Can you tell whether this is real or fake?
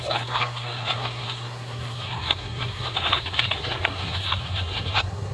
fake